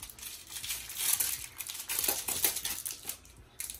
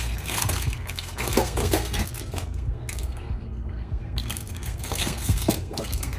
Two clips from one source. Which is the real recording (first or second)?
first